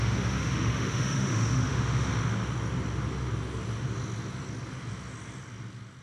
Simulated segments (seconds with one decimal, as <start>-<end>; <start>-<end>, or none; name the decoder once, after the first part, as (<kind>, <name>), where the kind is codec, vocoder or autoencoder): 0.0-2.1 (autoencoder, DAC-VAE)